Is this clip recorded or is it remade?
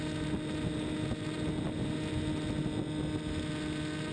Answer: recorded